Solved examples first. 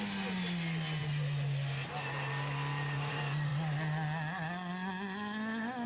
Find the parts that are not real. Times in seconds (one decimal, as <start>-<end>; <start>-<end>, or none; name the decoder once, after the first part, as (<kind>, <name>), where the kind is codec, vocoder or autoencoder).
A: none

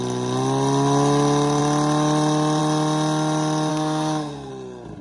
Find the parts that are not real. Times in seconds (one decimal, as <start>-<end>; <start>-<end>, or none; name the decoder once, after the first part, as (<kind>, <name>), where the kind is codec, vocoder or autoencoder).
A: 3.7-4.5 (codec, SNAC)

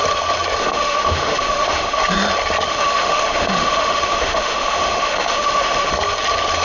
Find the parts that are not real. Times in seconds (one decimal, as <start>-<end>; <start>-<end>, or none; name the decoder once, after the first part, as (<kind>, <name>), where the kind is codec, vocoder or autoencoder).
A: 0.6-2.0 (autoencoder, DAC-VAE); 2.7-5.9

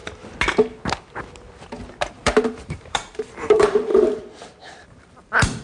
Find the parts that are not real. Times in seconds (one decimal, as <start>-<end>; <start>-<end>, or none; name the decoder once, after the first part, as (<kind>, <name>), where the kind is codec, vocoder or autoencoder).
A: 2.1-5.6 (vocoder, BigVGAN v2)

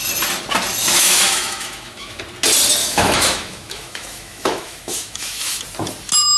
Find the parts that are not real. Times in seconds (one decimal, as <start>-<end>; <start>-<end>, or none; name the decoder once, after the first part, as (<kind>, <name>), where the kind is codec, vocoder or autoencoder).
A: 0.8-2.2 (autoencoder, DAC-VAE); 2.8-5.6

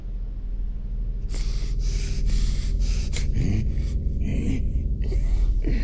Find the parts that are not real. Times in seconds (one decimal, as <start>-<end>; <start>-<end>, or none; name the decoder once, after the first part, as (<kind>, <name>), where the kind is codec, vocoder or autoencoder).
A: 4.3-5.8 (vocoder, BigVGAN v2)

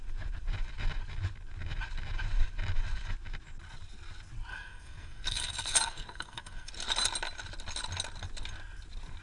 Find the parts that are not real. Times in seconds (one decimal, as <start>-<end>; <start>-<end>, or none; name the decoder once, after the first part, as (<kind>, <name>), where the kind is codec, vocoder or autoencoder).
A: 4.5-6.7 (codec, SNAC)